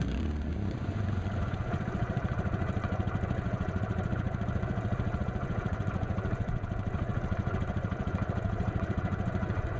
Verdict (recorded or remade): remade